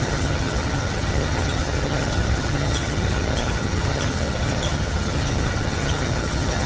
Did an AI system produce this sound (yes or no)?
yes